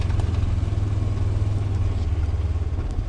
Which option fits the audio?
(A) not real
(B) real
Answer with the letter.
B